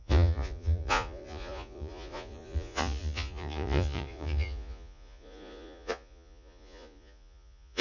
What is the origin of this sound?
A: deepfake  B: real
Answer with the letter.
A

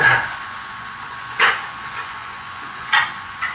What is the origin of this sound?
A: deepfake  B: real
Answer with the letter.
A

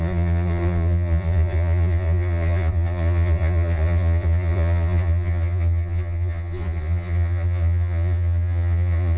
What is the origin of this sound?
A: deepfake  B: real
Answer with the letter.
A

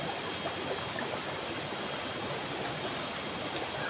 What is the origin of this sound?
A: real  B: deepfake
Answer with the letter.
A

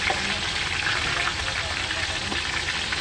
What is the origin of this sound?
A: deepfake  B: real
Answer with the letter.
B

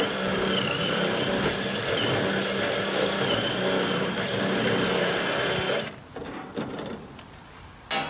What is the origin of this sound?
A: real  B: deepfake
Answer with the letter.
A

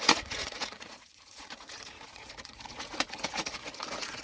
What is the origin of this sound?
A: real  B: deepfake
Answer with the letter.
B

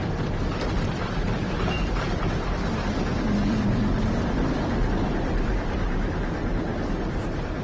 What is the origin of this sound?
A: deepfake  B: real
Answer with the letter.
B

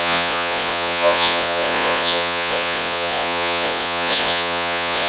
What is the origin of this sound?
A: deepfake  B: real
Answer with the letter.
A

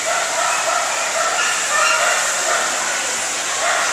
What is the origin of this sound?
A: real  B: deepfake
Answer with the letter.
A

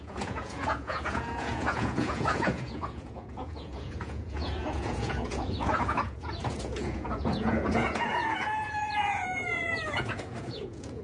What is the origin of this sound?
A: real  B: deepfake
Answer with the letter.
B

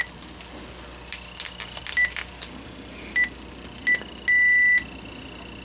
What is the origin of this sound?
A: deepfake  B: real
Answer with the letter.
B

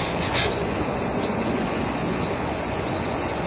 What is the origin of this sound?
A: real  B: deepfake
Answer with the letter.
B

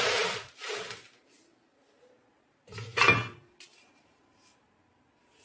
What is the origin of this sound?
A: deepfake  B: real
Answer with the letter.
B